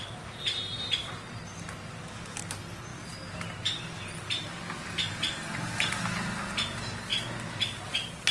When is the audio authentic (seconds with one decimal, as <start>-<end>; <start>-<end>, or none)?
0.0-8.3